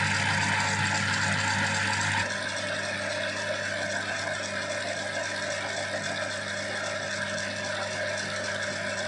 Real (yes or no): yes